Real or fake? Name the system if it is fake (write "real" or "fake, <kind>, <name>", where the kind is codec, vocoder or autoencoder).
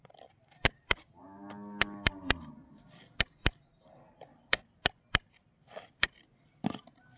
real